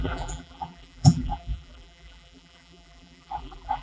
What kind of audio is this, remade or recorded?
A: remade